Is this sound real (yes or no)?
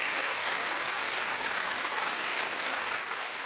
no